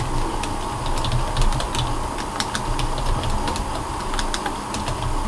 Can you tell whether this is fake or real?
real